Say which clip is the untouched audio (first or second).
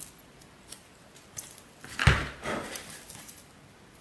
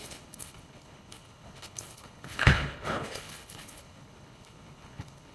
first